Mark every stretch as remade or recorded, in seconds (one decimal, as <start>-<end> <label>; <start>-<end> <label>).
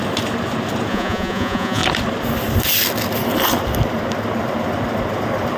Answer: 0.0-0.9 recorded; 0.9-1.8 remade; 1.8-5.6 recorded